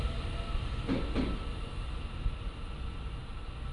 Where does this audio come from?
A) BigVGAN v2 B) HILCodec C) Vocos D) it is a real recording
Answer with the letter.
D